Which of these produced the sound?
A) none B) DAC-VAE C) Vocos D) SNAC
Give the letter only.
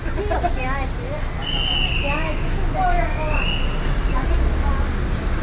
A